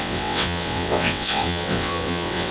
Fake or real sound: fake